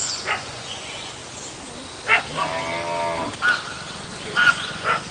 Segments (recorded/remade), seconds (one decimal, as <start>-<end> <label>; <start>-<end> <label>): 0.0-1.2 remade; 1.2-4.1 recorded; 4.1-5.1 remade